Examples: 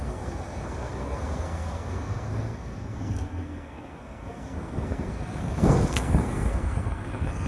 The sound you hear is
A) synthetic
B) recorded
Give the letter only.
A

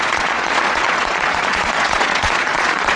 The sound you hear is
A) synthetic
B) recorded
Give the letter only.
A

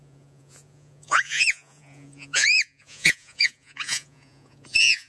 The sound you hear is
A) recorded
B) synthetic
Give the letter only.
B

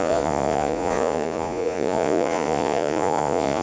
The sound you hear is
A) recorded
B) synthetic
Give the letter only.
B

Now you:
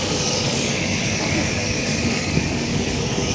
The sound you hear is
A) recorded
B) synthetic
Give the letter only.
B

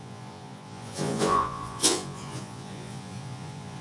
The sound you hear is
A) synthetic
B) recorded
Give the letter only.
A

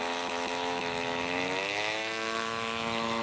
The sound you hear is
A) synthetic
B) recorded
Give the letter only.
A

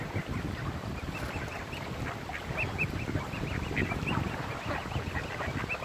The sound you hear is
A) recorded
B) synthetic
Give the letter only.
A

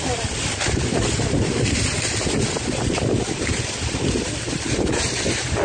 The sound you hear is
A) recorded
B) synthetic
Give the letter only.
A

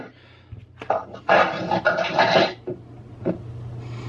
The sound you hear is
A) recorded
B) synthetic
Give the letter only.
A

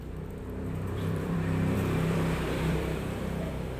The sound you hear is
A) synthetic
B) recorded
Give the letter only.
A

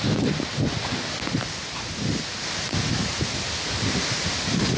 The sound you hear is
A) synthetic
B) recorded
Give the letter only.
B